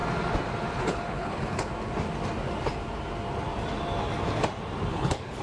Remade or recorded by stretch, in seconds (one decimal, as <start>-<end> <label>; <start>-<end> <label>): 0.0-0.8 recorded; 0.8-1.7 remade; 1.7-4.9 recorded; 4.9-5.4 remade